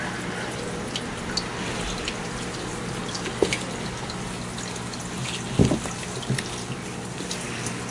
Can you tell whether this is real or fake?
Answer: real